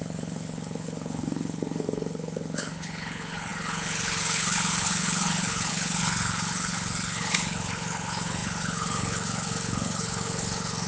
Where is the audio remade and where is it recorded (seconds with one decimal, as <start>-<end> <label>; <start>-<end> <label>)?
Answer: 0.0-10.9 remade